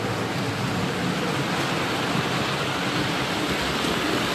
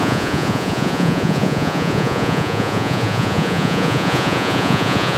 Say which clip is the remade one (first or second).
second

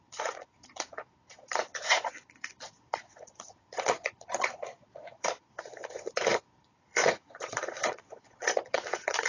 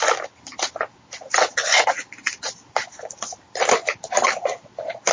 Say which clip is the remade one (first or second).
first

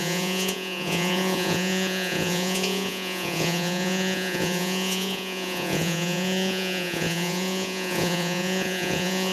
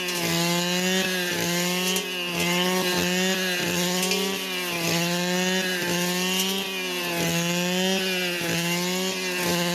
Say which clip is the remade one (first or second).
first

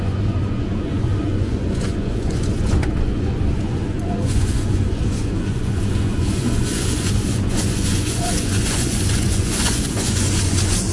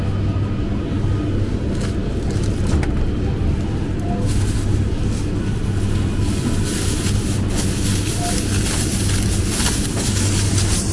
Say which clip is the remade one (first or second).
first